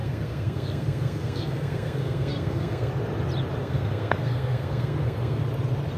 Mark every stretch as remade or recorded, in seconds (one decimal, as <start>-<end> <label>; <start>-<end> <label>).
0.0-2.9 remade; 2.9-3.6 recorded; 3.6-5.4 remade; 5.4-6.0 recorded